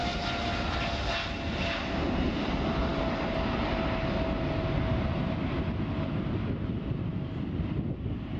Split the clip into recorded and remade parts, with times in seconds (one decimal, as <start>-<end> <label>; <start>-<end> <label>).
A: 0.0-8.4 recorded